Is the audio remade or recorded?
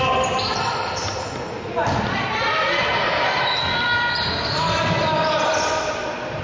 recorded